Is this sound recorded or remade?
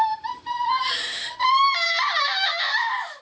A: remade